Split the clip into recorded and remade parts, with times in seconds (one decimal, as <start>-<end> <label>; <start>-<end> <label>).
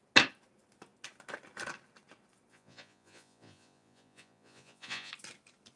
0.0-2.5 recorded; 2.5-5.1 remade; 5.1-5.8 recorded